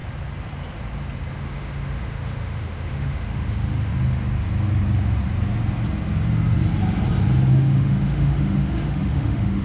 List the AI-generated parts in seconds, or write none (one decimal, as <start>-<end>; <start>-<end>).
1.3-3.9; 7.5-9.6